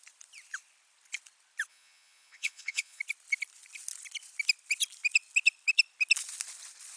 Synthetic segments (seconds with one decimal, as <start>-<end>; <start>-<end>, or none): 1.7-3.0